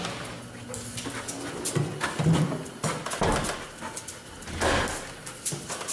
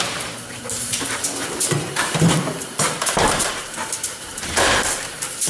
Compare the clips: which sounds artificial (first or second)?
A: second